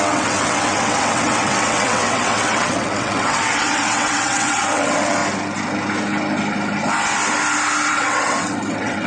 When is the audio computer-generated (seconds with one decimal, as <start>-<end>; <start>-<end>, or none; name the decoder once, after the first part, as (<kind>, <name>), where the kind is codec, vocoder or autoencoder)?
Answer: 0.0-5.2 (vocoder, WaveNeXt); 7.9-9.1